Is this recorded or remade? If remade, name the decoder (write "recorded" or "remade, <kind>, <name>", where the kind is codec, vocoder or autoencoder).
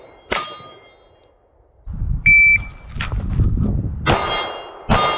recorded